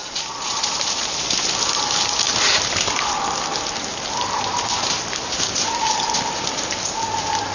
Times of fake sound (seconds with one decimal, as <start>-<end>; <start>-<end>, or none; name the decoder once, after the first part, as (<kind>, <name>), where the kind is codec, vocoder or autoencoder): none